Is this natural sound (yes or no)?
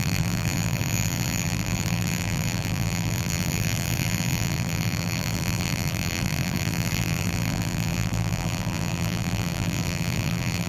no